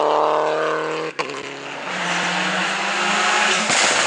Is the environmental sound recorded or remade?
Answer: recorded